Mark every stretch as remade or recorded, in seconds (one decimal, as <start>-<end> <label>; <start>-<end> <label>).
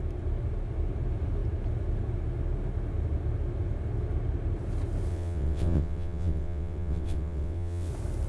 0.0-5.1 recorded; 5.1-7.9 remade; 7.9-8.3 recorded